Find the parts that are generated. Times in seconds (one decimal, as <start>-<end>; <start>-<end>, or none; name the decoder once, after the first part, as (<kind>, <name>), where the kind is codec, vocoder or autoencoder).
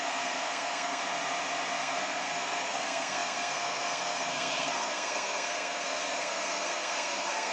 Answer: 0.0-1.0 (codec, SNAC); 1.8-7.5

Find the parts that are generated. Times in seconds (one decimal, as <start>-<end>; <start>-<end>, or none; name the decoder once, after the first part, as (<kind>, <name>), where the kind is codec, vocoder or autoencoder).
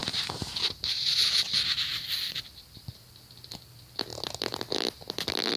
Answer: 1.9-2.9 (vocoder, BigVGAN v2)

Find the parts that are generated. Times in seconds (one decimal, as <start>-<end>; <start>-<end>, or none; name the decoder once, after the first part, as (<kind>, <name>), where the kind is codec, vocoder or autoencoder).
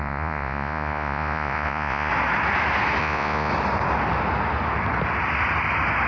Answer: 0.0-2.1 (vocoder, Vocos); 3.0-3.5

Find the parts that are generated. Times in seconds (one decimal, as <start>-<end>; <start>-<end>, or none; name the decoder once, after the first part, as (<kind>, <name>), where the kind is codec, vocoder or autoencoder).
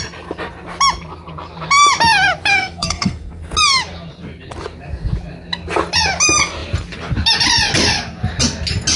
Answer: 2.5-3.4 (codec, SNAC)